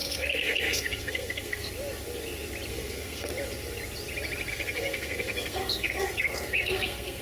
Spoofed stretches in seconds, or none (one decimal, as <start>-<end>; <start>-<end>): 0.0-1.7; 2.7-3.3; 4.5-7.2